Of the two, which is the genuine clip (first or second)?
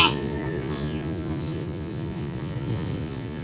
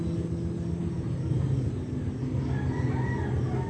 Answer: second